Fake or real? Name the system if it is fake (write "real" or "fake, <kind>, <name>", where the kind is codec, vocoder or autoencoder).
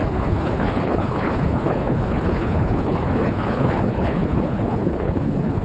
fake, codec, HILCodec